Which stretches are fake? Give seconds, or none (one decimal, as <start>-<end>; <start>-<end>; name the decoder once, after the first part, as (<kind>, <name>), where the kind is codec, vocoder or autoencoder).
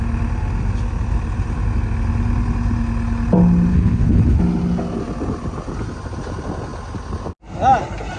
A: 3.7-4.4 (codec, HILCodec)